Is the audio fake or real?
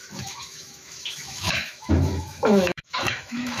fake